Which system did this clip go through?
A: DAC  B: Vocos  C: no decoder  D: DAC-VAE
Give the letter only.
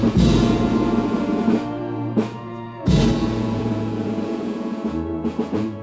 B